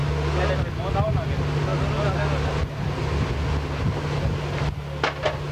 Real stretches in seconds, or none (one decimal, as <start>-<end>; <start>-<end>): 0.0-5.5

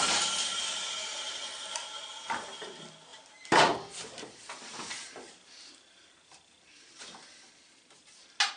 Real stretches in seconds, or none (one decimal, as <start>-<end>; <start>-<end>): 0.0-3.1; 7.0-8.6

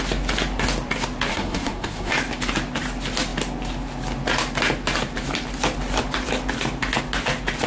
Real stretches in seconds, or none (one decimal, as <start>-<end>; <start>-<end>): 0.0-1.3; 2.1-7.7